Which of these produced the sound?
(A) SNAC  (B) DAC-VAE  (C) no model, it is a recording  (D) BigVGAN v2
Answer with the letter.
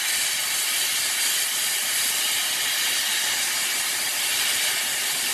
C